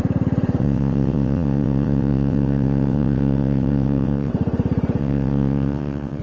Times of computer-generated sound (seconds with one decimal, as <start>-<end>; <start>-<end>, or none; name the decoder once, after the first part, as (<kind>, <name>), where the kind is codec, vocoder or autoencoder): 0.6-4.3 (vocoder, WaveNeXt); 5.0-6.2